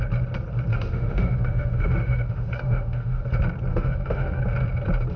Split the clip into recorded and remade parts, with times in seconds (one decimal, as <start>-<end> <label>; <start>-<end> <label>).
0.0-0.7 recorded; 0.7-3.2 remade; 3.2-3.7 recorded; 3.7-4.4 remade; 4.4-5.2 recorded